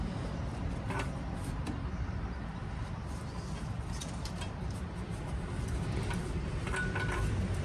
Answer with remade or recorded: remade